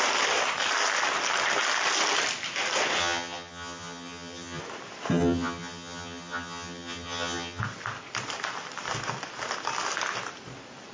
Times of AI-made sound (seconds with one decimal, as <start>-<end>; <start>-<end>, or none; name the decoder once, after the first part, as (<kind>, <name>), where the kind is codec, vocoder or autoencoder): 3.0-4.6 (vocoder, HiFi-GAN); 5.1-7.6